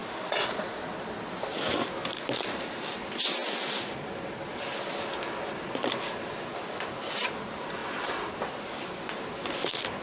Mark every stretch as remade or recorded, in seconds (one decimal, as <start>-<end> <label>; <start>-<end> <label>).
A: 0.0-10.0 recorded